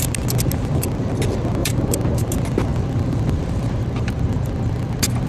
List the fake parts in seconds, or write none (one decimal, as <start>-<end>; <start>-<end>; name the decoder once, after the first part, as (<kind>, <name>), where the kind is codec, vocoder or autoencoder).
1.6-2.3 (vocoder, BigVGAN v2); 2.7-5.3